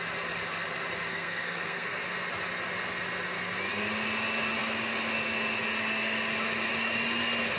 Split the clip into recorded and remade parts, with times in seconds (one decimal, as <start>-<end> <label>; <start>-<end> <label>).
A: 0.0-1.1 recorded; 1.1-2.0 remade; 2.0-7.6 recorded